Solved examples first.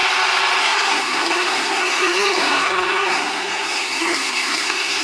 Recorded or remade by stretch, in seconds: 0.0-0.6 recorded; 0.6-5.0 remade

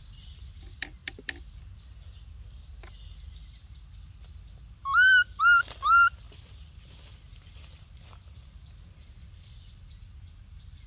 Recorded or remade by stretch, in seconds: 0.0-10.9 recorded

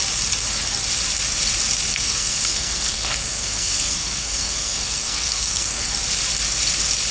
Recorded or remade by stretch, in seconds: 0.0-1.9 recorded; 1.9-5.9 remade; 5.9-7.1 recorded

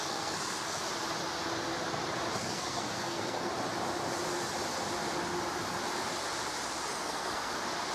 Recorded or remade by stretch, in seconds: 0.0-0.8 remade; 0.8-2.4 recorded; 2.4-3.5 remade; 3.5-6.9 recorded; 6.9-7.5 remade; 7.5-7.9 recorded

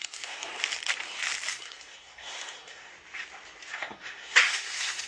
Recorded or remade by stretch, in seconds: 0.0-0.5 remade; 0.5-1.5 recorded; 1.5-2.9 remade; 2.9-3.7 recorded; 3.7-5.1 remade